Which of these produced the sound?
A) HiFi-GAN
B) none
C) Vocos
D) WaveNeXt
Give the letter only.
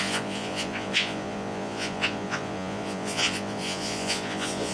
C